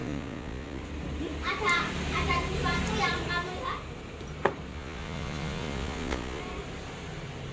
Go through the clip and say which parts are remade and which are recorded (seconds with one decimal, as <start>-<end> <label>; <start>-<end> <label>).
0.0-0.8 remade; 0.8-4.7 recorded; 4.7-6.4 remade; 6.4-7.5 recorded